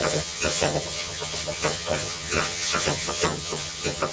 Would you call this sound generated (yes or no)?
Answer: yes